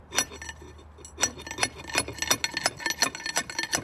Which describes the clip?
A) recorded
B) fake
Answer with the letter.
A